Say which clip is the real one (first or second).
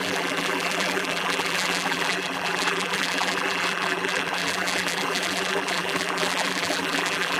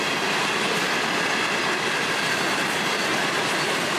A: second